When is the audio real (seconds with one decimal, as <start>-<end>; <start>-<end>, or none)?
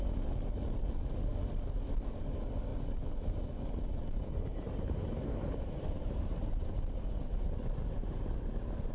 0.0-2.7; 6.8-8.9